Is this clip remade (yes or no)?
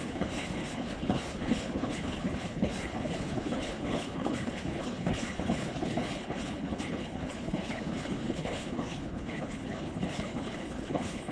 yes